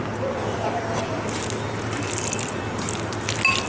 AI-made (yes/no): no